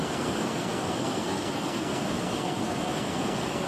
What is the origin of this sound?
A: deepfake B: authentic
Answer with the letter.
A